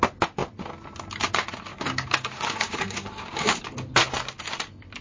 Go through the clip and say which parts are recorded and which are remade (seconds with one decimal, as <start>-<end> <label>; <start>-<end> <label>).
0.0-1.7 recorded; 1.7-3.6 remade; 3.6-5.0 recorded